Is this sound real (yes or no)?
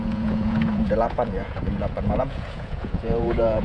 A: no